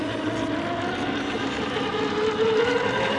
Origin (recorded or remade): recorded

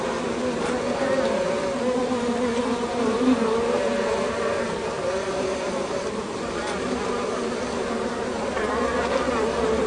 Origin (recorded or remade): remade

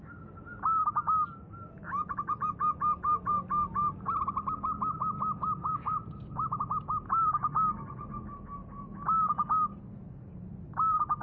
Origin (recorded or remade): recorded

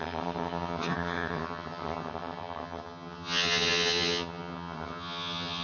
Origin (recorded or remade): remade